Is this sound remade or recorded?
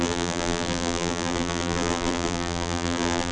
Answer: remade